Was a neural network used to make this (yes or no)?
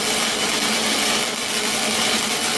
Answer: no